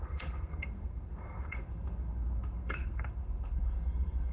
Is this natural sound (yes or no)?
no